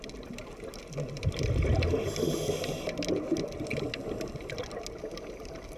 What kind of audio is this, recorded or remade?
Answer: recorded